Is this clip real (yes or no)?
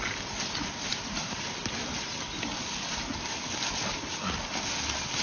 yes